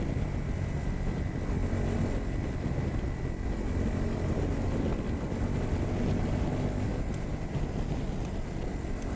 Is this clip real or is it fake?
real